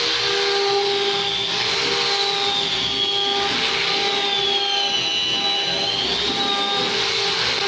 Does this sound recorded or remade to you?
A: recorded